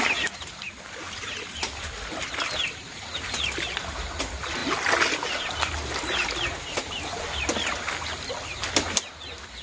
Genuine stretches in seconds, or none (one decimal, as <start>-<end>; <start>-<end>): 0.0-9.6